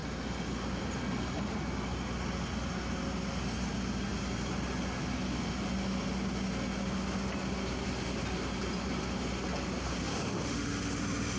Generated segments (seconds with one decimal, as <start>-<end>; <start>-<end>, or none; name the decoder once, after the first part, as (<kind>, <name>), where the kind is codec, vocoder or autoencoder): 10.1-11.0 (autoencoder, DAC-VAE)

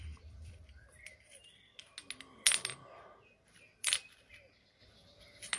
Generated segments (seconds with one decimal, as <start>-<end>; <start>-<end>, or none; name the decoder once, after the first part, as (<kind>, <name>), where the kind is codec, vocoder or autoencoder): 0.0-1.4 (vocoder, BigVGAN v2); 3.3-4.8